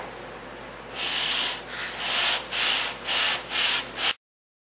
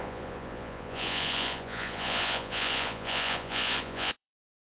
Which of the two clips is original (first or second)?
first